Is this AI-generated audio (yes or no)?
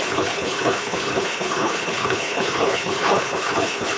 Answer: yes